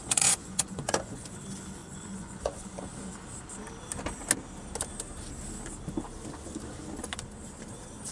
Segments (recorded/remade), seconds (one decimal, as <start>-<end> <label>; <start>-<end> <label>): 0.0-1.4 remade; 1.4-1.8 recorded; 1.8-2.8 remade; 2.8-8.1 recorded